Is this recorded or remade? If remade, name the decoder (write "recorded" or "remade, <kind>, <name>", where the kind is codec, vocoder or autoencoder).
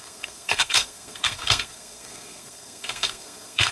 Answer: remade, codec, SNAC